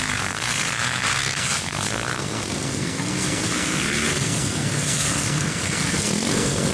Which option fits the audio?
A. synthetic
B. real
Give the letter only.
A